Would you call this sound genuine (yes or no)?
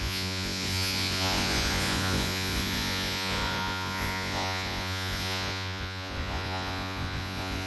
no